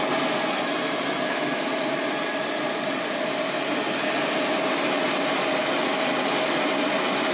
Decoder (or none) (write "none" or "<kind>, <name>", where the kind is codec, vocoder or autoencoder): none